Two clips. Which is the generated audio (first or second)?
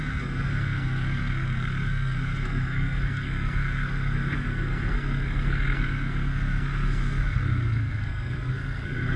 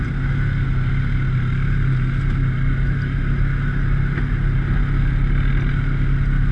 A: first